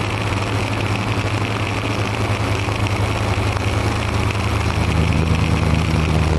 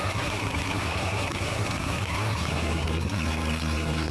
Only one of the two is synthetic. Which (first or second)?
second